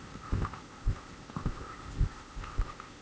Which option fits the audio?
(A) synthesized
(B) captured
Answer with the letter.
A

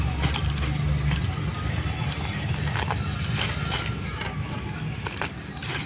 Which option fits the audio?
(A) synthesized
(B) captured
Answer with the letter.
B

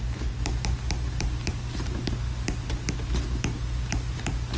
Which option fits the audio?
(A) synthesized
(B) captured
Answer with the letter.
B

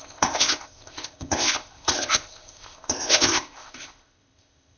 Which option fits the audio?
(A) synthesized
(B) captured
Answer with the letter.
A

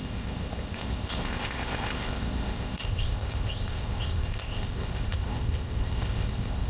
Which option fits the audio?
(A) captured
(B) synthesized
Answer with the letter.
B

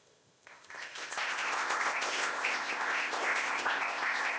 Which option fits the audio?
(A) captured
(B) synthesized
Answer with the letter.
B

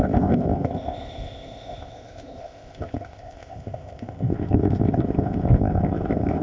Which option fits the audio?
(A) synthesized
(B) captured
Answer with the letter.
A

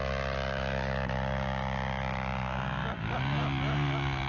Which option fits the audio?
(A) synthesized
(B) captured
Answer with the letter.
B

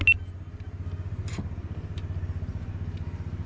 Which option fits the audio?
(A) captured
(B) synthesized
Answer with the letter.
A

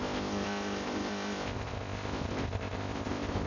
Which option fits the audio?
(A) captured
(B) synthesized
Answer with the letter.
B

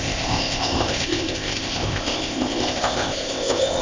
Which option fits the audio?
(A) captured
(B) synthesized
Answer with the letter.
B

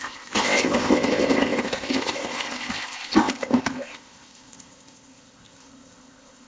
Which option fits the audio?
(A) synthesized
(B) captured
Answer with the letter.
A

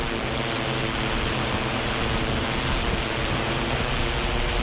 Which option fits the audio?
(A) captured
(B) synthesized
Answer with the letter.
A